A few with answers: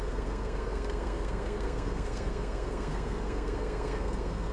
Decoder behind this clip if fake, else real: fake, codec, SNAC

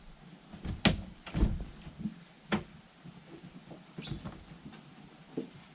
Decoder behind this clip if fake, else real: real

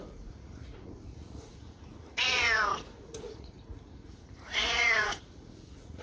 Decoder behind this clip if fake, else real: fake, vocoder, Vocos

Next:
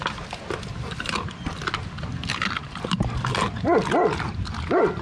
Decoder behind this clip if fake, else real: real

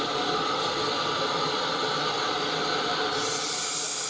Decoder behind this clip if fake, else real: real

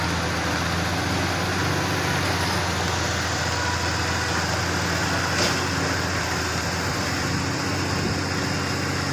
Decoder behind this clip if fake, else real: real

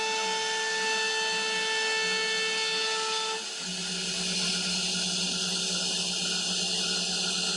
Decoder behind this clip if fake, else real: real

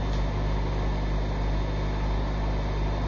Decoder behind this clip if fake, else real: real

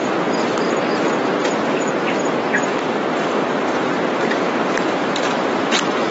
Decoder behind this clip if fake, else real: fake, vocoder, BigVGAN v2